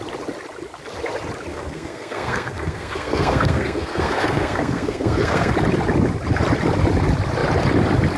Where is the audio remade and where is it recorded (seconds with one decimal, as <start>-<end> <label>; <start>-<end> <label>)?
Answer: 0.0-1.5 recorded; 1.5-5.5 remade; 5.5-8.2 recorded